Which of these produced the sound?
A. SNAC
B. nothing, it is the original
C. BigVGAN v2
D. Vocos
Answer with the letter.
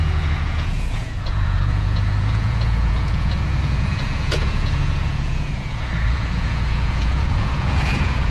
D